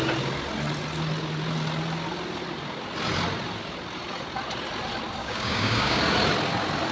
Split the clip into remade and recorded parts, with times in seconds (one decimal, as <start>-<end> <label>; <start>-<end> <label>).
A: 0.0-5.2 recorded; 5.2-6.0 remade; 6.0-6.9 recorded